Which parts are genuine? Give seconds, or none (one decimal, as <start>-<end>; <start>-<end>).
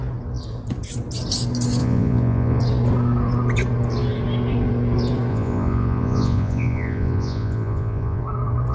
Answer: 0.0-1.8; 2.6-5.3; 8.2-8.7